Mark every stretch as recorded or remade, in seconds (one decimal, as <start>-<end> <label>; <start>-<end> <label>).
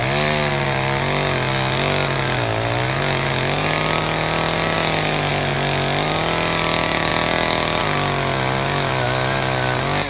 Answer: 0.0-10.1 recorded